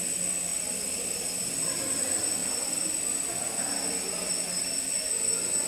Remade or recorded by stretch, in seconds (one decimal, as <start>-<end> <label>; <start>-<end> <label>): 0.0-5.7 recorded

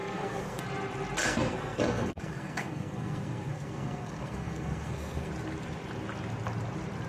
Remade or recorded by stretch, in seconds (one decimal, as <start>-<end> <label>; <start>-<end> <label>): 0.0-0.6 remade; 0.6-1.2 recorded; 1.2-5.3 remade; 5.3-7.1 recorded

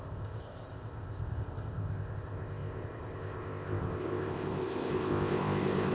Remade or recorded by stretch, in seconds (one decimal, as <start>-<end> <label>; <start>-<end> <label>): 0.0-5.9 remade

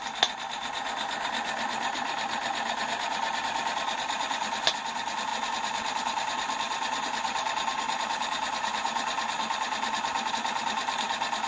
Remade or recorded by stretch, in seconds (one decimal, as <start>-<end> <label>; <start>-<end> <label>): 0.0-11.5 recorded

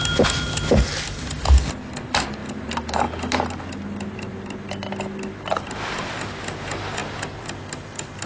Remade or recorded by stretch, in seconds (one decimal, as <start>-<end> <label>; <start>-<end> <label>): 0.0-8.3 recorded